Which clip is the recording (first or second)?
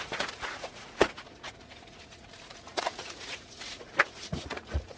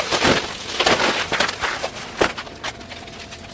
second